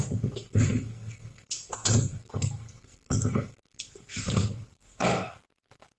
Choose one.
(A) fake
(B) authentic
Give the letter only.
A